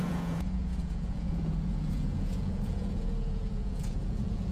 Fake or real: fake